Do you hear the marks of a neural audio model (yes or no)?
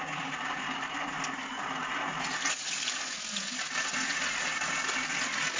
no